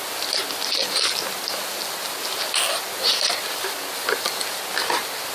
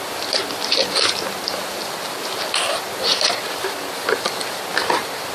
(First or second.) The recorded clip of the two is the first